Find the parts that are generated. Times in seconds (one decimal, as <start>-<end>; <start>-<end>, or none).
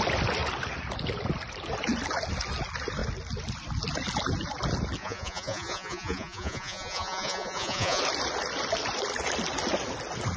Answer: 5.0-8.0